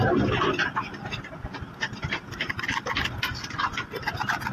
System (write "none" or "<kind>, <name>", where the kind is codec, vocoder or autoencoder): none